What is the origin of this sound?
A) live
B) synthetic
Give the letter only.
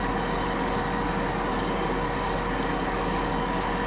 B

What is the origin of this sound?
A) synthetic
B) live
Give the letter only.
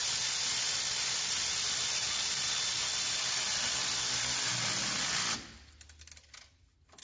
B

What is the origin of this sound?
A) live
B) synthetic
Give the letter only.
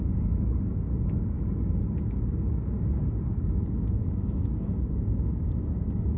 B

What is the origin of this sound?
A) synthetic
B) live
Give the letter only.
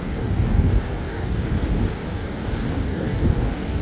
A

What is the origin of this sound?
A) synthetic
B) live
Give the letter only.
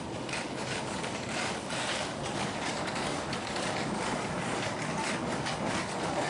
A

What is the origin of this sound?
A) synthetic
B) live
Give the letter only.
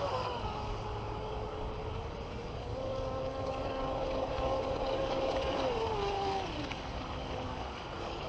A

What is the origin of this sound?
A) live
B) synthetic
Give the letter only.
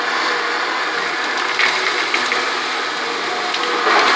A